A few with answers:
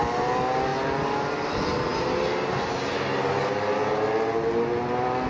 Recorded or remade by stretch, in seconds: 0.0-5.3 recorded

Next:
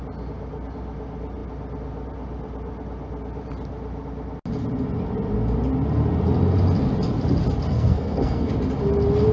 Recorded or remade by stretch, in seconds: 0.0-7.7 recorded; 7.7-8.5 remade; 8.5-9.3 recorded

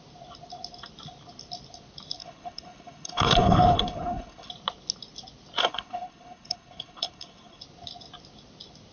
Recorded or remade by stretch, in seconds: 0.0-2.2 recorded; 2.2-4.5 remade; 4.5-5.6 recorded; 5.6-7.6 remade; 7.6-8.9 recorded

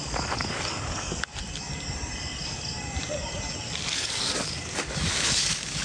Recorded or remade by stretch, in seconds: 0.0-1.3 remade; 1.3-3.9 recorded; 3.9-5.8 remade

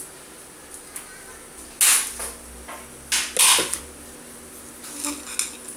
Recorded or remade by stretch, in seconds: 0.0-5.8 recorded

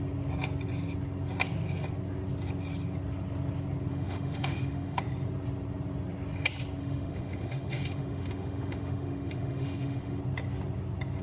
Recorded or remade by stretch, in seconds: 0.0-3.9 recorded; 3.9-5.0 remade; 5.0-6.8 recorded; 6.8-10.2 remade; 10.2-11.2 recorded

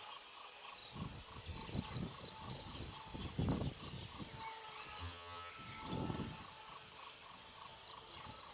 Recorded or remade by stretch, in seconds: 0.0-5.0 recorded; 5.0-5.5 remade; 5.5-8.5 recorded

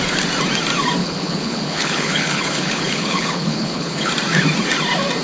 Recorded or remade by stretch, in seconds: 0.0-1.0 recorded; 1.0-4.1 remade; 4.1-5.2 recorded